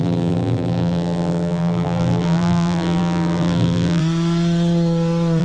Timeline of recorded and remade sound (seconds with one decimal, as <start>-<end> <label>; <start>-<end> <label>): 0.0-4.0 remade; 4.0-5.4 recorded